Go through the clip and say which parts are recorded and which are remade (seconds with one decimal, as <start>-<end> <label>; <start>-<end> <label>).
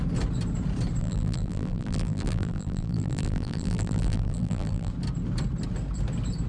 0.0-1.0 recorded; 1.0-4.9 remade; 4.9-6.5 recorded